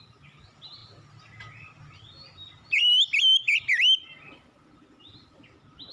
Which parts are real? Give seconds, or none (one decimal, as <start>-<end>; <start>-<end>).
0.0-5.9